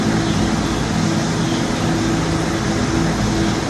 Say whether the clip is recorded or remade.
recorded